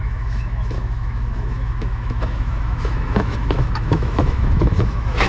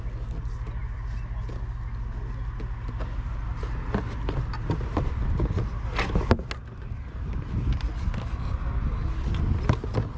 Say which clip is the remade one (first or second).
first